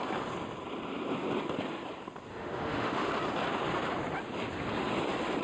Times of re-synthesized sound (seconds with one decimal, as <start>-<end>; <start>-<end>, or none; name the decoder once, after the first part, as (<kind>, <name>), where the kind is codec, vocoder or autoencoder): 2.3-3.1 (autoencoder, DAC-VAE)